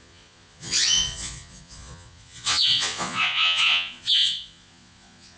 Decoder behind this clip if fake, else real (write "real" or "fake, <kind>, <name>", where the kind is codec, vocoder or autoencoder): fake, vocoder, Vocos